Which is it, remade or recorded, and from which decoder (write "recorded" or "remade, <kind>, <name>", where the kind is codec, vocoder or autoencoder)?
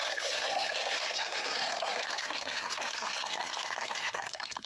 remade, codec, SNAC